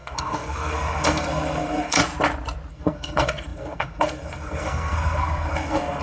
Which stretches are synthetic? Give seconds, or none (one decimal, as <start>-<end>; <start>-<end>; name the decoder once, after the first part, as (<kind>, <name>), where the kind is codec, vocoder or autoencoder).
0.0-2.0 (codec, SNAC); 2.7-6.0